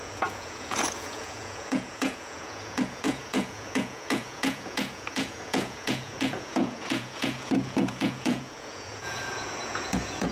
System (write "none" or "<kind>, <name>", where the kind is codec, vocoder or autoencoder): vocoder, Vocos